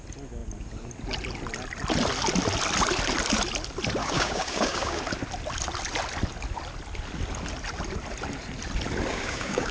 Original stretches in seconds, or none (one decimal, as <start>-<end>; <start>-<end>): 0.0-4.0; 5.0-9.1